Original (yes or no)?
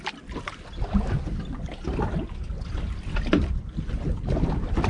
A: yes